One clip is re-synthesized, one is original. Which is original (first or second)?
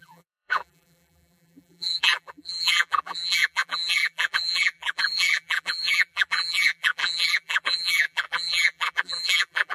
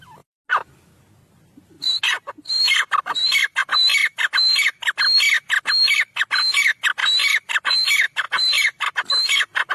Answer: second